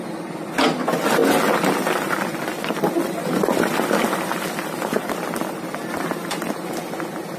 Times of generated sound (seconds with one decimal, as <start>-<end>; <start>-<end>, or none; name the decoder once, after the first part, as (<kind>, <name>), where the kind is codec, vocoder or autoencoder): none